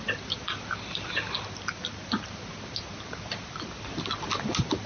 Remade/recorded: recorded